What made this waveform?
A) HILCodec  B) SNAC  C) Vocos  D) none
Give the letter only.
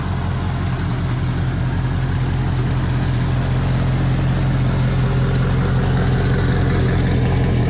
D